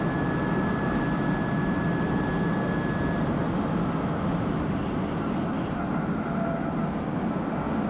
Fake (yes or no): no